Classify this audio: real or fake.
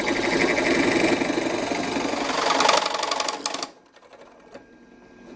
real